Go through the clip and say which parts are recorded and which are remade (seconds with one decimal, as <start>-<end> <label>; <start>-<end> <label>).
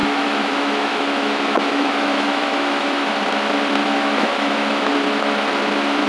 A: 0.0-3.1 remade; 3.1-3.8 recorded; 3.8-4.9 remade; 4.9-6.1 recorded